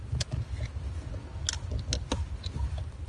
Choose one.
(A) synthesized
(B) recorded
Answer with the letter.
B